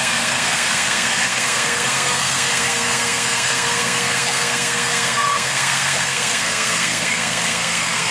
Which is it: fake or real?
fake